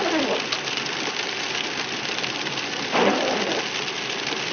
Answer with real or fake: real